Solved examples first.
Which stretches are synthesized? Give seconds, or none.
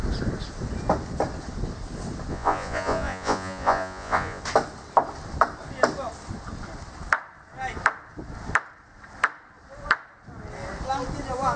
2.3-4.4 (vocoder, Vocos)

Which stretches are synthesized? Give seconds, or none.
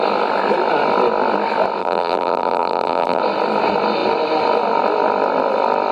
1.8-3.2 (vocoder, BigVGAN v2)